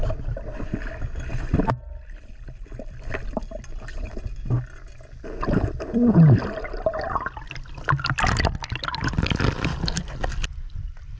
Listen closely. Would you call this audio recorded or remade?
recorded